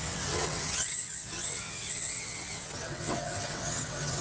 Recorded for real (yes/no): no